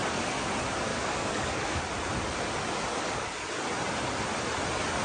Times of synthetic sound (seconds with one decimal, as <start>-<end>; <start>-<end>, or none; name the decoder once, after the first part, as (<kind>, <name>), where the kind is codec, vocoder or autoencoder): 0.0-0.5 (codec, DAC); 0.9-1.8; 2.9-3.5